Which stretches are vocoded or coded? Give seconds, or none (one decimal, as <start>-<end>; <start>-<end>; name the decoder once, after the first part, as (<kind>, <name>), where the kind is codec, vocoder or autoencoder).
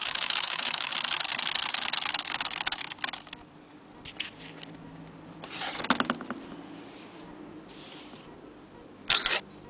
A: 0.0-0.9 (autoencoder, DAC-VAE)